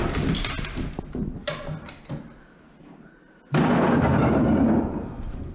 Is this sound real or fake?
real